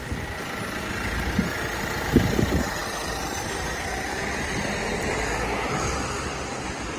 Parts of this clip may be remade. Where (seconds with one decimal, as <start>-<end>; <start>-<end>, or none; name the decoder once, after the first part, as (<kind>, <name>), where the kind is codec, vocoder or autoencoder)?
none